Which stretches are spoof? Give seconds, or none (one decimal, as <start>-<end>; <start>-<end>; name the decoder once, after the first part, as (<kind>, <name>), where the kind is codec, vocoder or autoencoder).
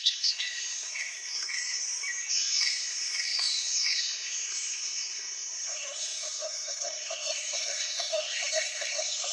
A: 0.0-1.8 (codec, SNAC); 2.3-9.3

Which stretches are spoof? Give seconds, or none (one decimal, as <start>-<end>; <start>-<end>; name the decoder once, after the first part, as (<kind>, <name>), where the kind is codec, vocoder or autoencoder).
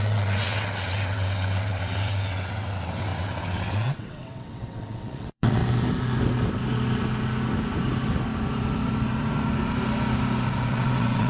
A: 0.0-5.6 (vocoder, WaveNeXt); 10.6-11.3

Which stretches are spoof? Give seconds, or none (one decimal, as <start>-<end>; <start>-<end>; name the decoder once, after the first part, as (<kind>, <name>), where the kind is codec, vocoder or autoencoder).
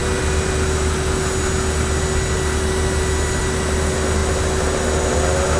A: none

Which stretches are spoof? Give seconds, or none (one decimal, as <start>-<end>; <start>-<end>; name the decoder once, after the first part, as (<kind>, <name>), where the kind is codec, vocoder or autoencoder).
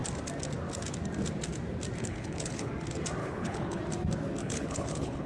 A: 2.0-2.7 (codec, HILCodec); 3.2-3.8; 4.4-5.3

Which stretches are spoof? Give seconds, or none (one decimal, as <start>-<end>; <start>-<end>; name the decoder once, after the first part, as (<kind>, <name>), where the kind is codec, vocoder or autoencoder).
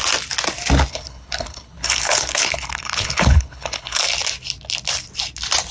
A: 0.9-4.0 (codec, HILCodec)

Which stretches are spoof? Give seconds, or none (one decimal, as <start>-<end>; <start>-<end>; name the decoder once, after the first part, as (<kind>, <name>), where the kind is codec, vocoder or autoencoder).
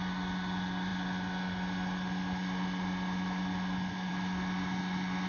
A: none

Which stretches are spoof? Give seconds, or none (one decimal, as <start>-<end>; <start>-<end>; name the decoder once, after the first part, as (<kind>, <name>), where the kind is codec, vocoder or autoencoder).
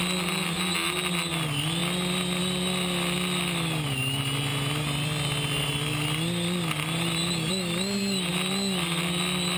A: none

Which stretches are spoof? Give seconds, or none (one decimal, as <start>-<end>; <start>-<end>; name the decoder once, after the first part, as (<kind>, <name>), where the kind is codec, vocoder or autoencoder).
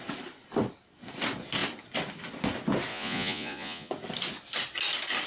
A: 2.9-3.9 (vocoder, Vocos)